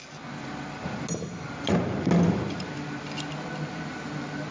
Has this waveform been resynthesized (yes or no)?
no